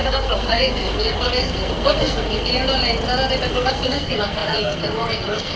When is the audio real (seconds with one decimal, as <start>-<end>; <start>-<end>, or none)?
2.5-3.5